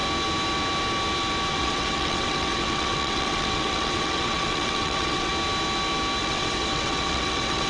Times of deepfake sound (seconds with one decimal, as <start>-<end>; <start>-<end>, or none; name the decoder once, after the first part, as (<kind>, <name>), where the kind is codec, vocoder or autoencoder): 1.5-5.3 (vocoder, WaveNeXt); 6.2-7.7